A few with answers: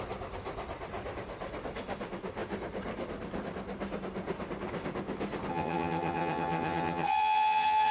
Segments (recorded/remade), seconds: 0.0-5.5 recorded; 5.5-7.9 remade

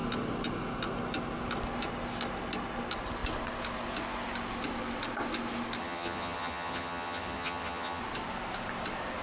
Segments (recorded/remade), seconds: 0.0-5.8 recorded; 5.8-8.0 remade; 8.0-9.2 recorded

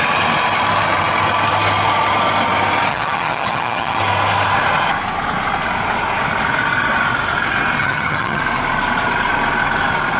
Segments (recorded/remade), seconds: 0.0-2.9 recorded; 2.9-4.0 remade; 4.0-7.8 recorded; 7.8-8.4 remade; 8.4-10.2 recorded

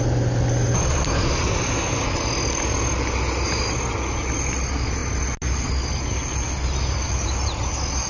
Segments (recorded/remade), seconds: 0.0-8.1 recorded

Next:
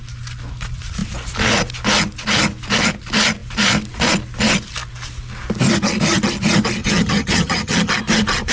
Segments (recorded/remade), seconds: 0.0-6.8 recorded; 6.8-7.9 remade; 7.9-8.5 recorded

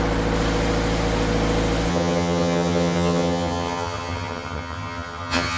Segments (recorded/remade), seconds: 0.0-1.9 recorded; 1.9-5.6 remade